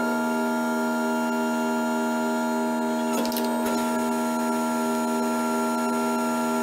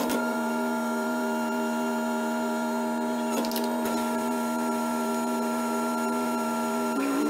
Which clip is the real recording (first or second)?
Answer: first